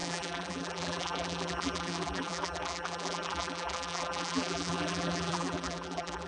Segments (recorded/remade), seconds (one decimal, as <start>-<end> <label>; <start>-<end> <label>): 0.0-6.3 remade